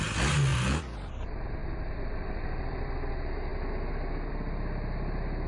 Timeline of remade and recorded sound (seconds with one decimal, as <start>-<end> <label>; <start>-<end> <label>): 0.0-1.6 recorded; 1.6-3.1 remade; 3.1-5.5 recorded